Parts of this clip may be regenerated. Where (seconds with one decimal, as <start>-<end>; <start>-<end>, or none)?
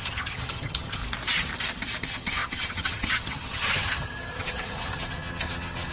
0.0-1.0; 2.0-5.9